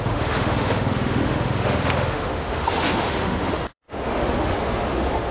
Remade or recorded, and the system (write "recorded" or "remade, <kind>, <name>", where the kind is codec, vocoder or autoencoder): remade, autoencoder, DAC-VAE